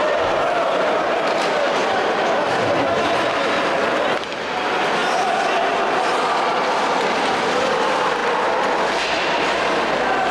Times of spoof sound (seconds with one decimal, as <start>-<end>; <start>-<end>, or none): none